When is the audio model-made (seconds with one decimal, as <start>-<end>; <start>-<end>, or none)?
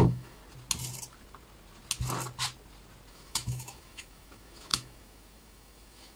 0.0-0.4; 3.1-6.2